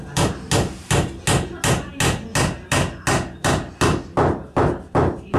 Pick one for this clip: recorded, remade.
recorded